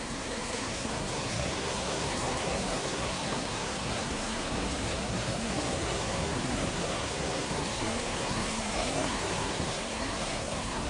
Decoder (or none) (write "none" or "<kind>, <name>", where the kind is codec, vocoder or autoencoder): codec, SNAC